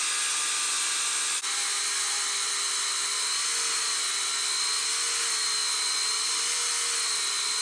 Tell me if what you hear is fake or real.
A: real